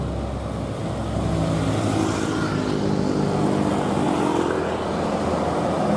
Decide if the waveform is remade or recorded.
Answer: recorded